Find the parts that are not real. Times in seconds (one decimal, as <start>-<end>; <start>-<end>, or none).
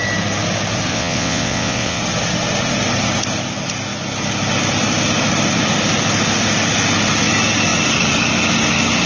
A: 0.9-2.0